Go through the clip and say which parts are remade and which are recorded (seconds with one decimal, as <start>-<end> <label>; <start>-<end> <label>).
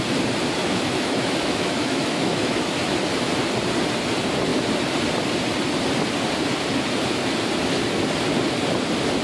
0.0-0.6 recorded; 0.6-2.8 remade; 2.8-9.2 recorded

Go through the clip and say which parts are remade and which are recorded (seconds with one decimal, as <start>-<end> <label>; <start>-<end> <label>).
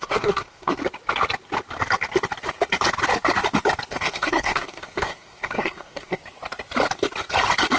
0.0-0.8 remade; 0.8-3.9 recorded; 3.9-6.2 remade; 6.2-7.8 recorded